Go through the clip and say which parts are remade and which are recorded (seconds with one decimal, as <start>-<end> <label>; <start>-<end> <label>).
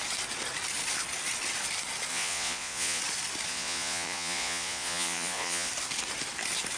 0.0-2.1 recorded; 2.1-3.0 remade; 3.0-3.5 recorded; 3.5-5.7 remade; 5.7-6.8 recorded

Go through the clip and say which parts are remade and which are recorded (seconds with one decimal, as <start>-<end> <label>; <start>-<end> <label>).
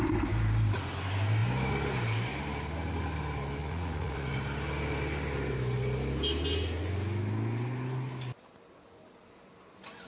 0.0-3.6 recorded; 3.6-4.3 remade; 4.3-10.1 recorded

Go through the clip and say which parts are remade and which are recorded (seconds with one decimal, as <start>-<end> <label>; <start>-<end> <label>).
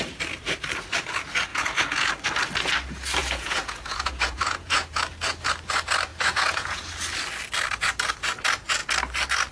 0.0-1.5 recorded; 1.5-2.1 remade; 2.1-3.2 recorded; 3.2-5.0 remade; 5.0-6.1 recorded; 6.1-6.9 remade; 6.9-9.5 recorded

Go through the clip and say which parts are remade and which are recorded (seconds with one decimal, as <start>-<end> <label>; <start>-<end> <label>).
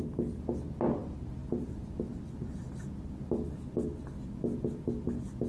0.0-5.5 recorded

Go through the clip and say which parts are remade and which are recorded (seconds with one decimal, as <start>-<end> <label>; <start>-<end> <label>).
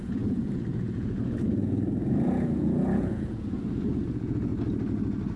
0.0-4.5 remade; 4.5-5.4 recorded